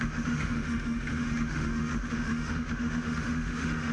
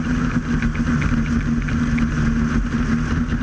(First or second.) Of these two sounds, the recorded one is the second